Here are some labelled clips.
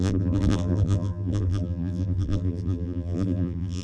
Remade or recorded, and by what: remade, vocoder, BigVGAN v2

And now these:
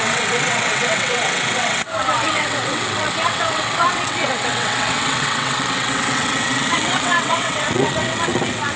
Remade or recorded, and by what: remade, vocoder, WaveNeXt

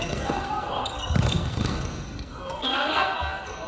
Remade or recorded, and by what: remade, codec, SNAC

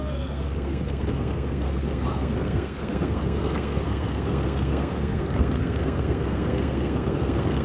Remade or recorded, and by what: remade, codec, SNAC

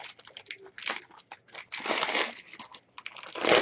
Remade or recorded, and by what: recorded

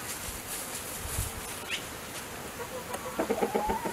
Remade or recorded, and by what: recorded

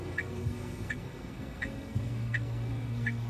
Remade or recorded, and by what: remade, codec, SNAC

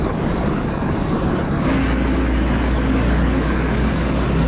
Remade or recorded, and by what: remade, codec, DAC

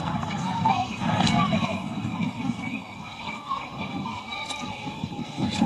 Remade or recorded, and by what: remade, codec, SNAC